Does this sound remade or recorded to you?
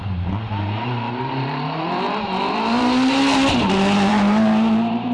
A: remade